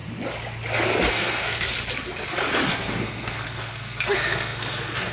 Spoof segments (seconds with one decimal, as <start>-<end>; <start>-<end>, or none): 1.1-1.7; 2.7-5.1